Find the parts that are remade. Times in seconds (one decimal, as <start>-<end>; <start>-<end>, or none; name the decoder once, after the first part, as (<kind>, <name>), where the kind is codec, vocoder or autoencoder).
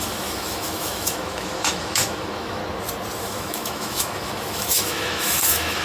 0.0-2.6 (autoencoder, DAC-VAE); 3.2-5.8